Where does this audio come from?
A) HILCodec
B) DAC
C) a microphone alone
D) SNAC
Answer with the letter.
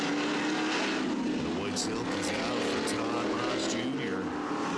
C